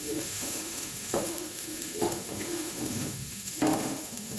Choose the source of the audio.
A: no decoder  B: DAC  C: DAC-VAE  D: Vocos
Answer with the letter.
C